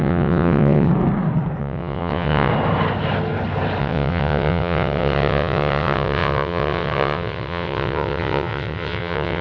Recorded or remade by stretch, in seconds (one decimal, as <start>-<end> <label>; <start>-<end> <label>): 0.0-0.9 remade; 0.9-1.6 recorded; 1.6-2.5 remade; 2.5-3.8 recorded; 3.8-9.4 remade